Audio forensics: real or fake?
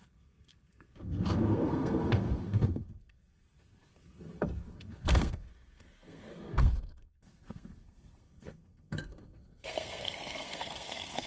fake